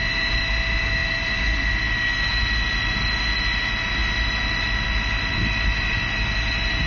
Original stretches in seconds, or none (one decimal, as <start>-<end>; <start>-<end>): 0.0-6.9